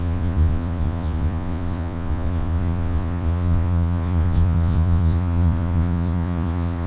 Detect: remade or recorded remade